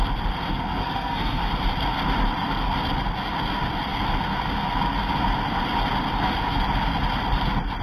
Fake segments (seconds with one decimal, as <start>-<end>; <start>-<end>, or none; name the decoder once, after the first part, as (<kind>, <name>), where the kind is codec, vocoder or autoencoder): 0.5-1.4 (codec, SNAC)